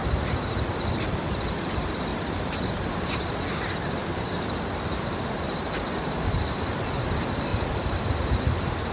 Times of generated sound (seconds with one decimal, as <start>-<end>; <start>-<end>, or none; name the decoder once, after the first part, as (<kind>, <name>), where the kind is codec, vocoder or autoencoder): 2.1-3.3 (vocoder, BigVGAN v2); 4.0-7.0; 7.5-8.9